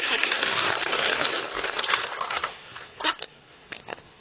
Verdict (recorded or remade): remade